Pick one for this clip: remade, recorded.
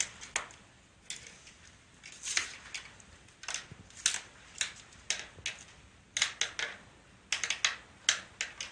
recorded